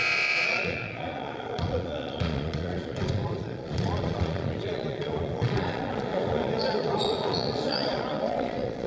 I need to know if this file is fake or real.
fake